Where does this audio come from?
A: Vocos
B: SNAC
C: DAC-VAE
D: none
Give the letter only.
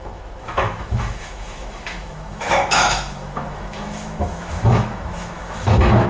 C